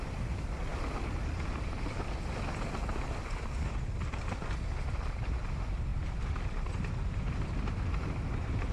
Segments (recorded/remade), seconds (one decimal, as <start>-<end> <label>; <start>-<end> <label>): 0.0-5.9 recorded; 5.9-8.7 remade